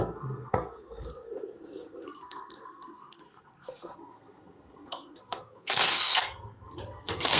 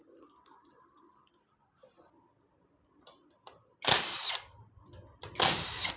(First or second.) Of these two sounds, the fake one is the first